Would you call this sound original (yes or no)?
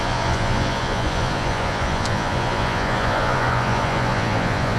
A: no